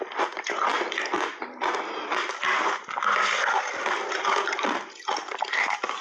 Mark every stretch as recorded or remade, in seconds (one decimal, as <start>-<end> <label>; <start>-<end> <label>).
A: 0.0-6.0 recorded